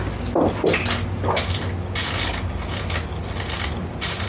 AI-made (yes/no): no